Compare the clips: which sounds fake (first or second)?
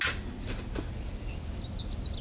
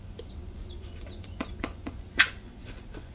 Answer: second